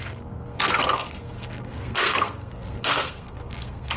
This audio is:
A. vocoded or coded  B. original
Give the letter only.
A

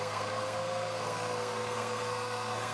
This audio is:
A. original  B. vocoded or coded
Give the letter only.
B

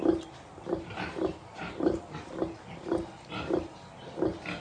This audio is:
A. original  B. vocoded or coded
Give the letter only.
A